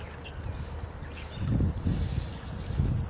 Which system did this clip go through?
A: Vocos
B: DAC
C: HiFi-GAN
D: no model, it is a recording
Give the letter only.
D